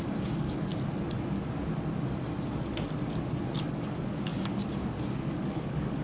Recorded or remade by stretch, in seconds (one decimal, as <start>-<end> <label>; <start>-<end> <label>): 0.0-0.7 remade; 0.7-3.6 recorded; 3.6-6.0 remade